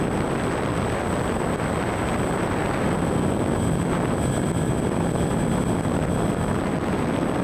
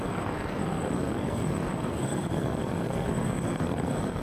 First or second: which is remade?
second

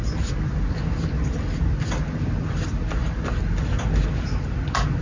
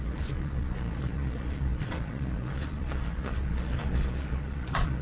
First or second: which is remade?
second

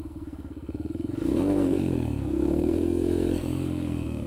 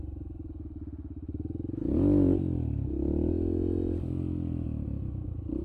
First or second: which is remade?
first